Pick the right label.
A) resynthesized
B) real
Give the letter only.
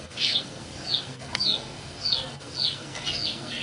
A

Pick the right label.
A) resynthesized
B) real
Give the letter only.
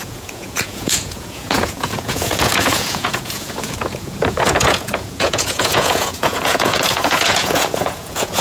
A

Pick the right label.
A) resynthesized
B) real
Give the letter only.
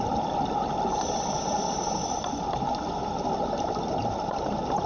A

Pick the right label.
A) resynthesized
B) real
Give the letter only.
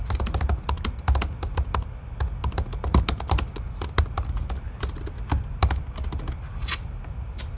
B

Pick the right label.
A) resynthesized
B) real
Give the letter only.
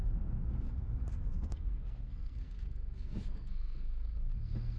A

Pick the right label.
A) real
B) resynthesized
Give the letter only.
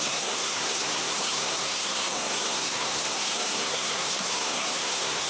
B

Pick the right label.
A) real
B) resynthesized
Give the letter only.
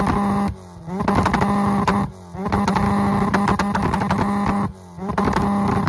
A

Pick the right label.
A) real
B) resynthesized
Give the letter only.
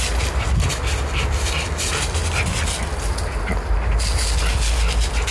A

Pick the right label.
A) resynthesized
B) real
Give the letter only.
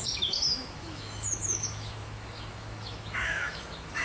A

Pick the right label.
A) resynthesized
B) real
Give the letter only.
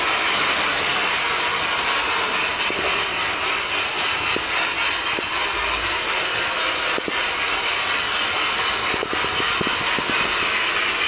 B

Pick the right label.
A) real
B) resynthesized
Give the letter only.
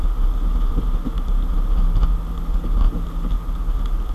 A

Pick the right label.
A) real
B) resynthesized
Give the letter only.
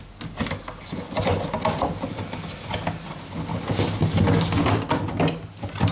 A